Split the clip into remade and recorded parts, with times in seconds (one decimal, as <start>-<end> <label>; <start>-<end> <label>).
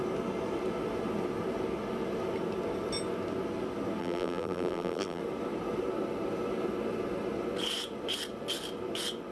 0.0-4.0 recorded; 4.0-5.2 remade; 5.2-9.3 recorded